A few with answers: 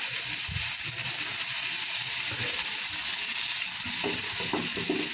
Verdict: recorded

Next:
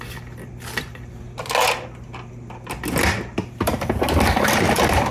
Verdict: recorded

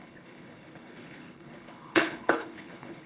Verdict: remade